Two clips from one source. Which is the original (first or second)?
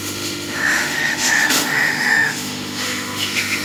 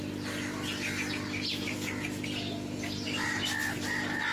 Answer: second